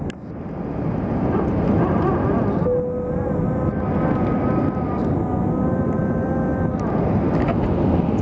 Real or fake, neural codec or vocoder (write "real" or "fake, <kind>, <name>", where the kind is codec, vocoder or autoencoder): real